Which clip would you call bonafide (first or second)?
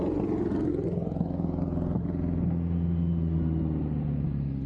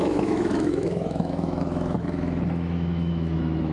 first